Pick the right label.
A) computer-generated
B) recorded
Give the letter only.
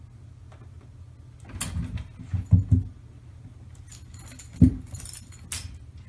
B